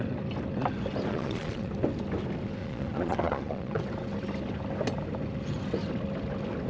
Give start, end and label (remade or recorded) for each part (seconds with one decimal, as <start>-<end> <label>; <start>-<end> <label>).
0.0-1.1 recorded; 1.1-1.7 remade; 1.7-2.6 recorded; 2.6-3.8 remade; 3.8-6.7 recorded